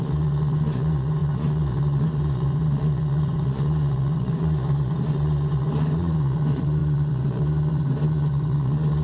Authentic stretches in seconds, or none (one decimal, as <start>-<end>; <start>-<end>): none